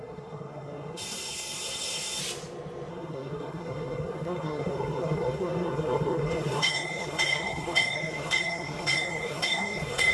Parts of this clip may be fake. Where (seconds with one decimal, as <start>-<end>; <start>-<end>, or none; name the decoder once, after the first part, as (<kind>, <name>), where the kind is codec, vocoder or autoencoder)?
0.0-2.2 (codec, SNAC); 2.9-10.1